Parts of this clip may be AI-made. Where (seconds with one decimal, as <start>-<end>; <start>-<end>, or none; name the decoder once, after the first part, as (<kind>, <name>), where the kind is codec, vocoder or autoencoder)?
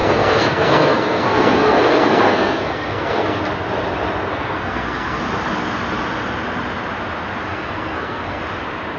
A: 0.0-3.4 (codec, SNAC); 4.3-5.2; 7.5-8.4